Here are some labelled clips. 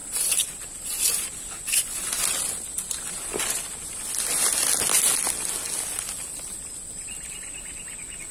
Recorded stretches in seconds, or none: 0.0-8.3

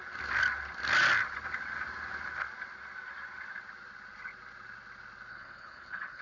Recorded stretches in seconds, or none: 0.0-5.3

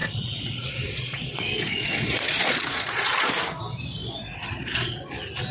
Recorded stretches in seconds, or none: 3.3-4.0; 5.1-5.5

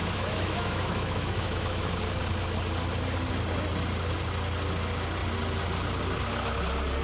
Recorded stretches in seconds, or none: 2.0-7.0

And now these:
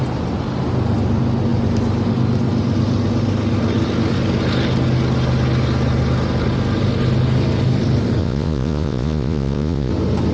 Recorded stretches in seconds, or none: 0.0-8.2; 9.9-10.3

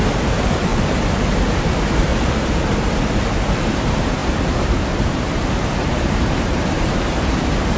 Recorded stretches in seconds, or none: 0.7-1.4; 2.1-3.5